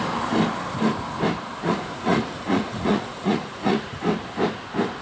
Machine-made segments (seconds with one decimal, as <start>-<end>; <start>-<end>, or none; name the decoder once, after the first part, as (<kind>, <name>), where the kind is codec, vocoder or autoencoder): 1.6-4.0 (vocoder, Vocos)